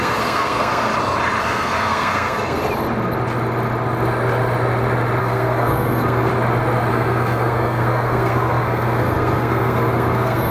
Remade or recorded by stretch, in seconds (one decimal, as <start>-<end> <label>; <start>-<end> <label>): 0.0-0.9 remade; 0.9-1.4 recorded; 1.4-2.6 remade; 2.6-5.2 recorded; 5.2-6.3 remade; 6.3-6.9 recorded; 6.9-10.5 remade